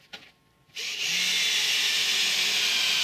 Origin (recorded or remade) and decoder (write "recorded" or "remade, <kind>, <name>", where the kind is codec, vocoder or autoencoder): recorded